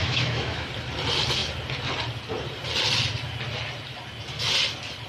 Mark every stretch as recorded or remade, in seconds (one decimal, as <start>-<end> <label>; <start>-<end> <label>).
0.0-0.7 remade; 0.7-5.1 recorded

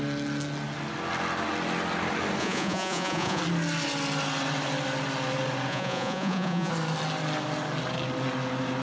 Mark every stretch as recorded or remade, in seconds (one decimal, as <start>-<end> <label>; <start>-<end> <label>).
0.0-2.4 recorded; 2.4-3.4 remade; 3.4-5.7 recorded; 5.7-6.7 remade; 6.7-8.8 recorded

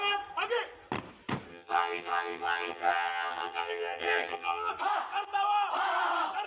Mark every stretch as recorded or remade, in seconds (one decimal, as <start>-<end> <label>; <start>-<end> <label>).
0.0-1.5 recorded; 1.5-4.7 remade; 4.7-6.5 recorded

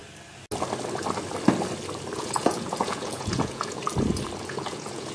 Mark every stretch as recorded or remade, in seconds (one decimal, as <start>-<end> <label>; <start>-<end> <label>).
0.0-2.2 recorded; 2.2-3.8 remade; 3.8-4.4 recorded; 4.4-5.1 remade

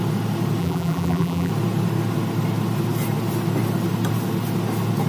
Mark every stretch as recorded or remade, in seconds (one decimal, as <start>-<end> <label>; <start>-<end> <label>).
0.0-0.6 recorded; 0.6-1.5 remade; 1.5-5.1 recorded